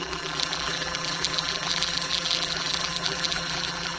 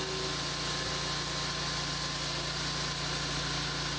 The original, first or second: second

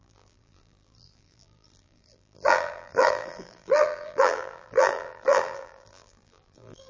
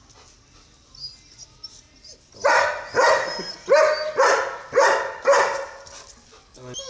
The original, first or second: second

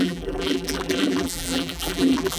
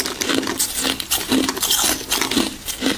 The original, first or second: second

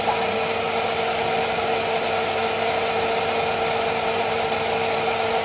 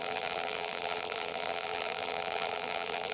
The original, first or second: first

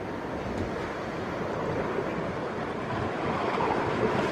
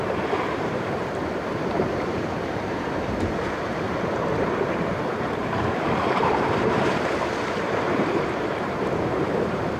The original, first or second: first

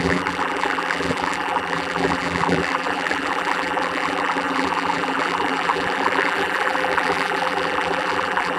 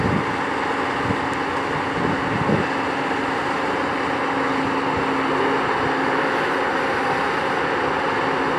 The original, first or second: second